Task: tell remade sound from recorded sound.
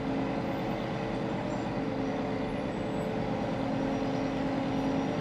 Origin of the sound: recorded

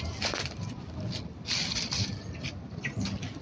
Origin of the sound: recorded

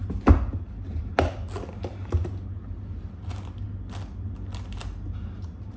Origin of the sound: recorded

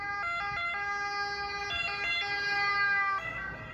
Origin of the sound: recorded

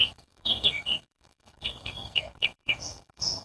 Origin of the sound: remade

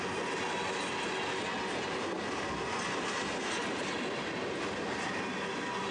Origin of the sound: recorded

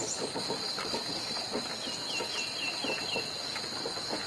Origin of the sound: recorded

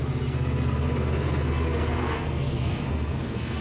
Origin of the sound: remade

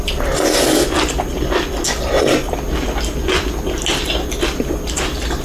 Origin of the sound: recorded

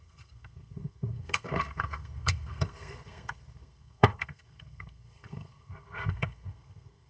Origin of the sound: remade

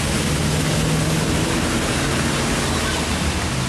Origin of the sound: recorded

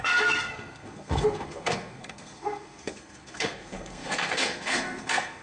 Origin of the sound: remade